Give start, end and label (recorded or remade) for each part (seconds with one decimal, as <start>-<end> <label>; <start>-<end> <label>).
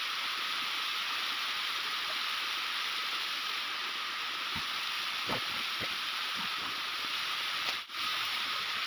0.0-0.9 recorded; 0.9-1.9 remade; 1.9-3.0 recorded; 3.0-3.8 remade; 3.8-6.9 recorded; 6.9-7.5 remade; 7.5-8.1 recorded; 8.1-8.9 remade